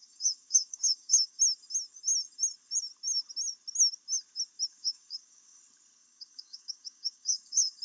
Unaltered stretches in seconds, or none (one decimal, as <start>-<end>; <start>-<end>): 1.4-4.7; 5.6-6.0